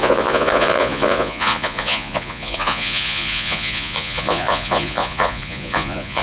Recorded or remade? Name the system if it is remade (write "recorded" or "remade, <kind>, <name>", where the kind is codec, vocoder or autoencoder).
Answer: remade, vocoder, Vocos